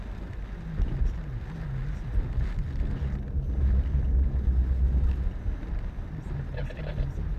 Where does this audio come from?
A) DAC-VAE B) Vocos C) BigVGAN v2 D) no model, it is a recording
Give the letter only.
D